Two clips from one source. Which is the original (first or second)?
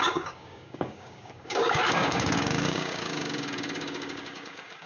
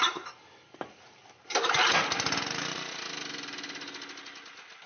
second